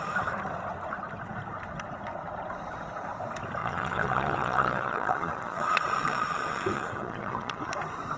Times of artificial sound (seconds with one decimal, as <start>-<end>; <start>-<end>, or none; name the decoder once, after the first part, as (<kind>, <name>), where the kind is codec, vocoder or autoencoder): 3.6-7.7 (vocoder, Vocos)